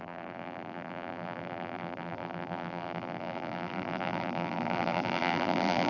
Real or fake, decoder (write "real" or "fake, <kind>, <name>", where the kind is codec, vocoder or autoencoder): fake, vocoder, BigVGAN v2